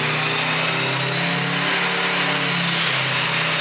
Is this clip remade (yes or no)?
no